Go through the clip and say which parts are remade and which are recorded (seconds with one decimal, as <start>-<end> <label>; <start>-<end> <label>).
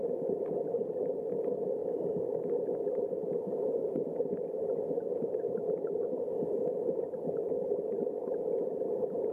0.0-9.3 recorded